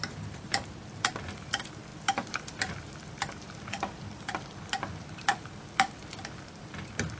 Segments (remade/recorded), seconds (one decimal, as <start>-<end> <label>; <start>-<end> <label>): 0.0-7.2 remade